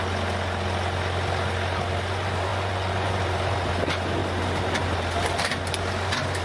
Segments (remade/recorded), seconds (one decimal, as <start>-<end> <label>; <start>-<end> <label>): 0.0-2.5 recorded; 2.5-3.2 remade; 3.2-6.4 recorded